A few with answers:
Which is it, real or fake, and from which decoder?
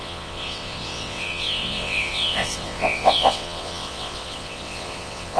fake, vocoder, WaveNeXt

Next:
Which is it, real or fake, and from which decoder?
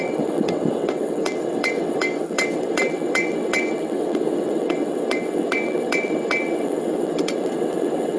fake, vocoder, WaveNeXt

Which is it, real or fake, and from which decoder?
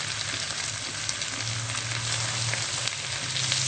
real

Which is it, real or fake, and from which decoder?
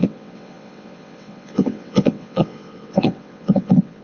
fake, vocoder, WaveNeXt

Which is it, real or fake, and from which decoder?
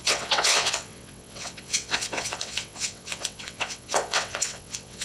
fake, vocoder, WaveNeXt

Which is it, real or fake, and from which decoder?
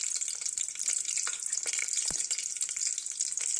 real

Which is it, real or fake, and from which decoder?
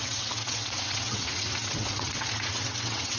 fake, vocoder, WaveNeXt